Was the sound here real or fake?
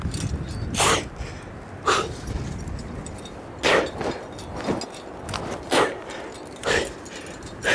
real